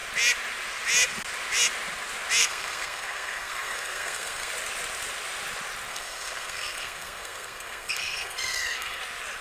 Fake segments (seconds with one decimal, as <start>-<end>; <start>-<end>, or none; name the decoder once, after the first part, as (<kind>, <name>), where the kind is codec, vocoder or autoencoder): 2.4-4.5 (codec, SNAC); 5.9-9.0